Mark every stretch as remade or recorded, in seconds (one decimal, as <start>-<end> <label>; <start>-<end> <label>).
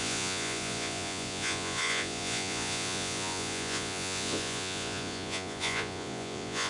0.0-6.7 remade